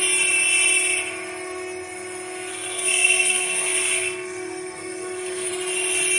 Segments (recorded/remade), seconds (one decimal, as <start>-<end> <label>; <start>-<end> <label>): 0.0-2.5 recorded; 2.5-5.5 remade; 5.5-6.2 recorded